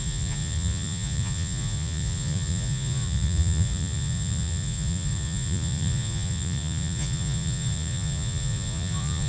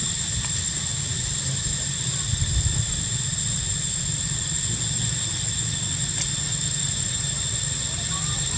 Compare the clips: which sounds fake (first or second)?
first